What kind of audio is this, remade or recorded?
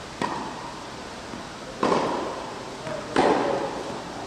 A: recorded